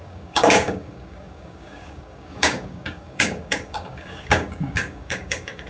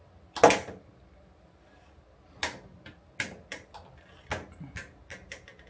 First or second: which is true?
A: second